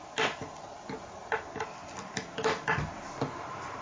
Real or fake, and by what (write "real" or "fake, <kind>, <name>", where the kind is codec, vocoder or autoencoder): real